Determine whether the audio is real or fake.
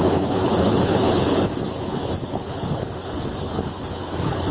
fake